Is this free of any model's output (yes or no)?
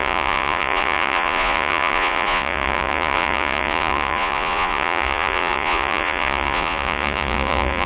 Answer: no